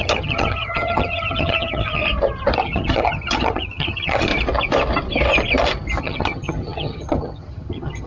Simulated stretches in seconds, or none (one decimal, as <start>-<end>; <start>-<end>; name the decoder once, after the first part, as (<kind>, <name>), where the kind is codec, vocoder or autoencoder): 0.0-2.0 (vocoder, HiFi-GAN); 2.6-4.3; 6.0-8.1